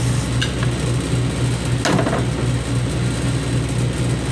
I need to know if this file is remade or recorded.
recorded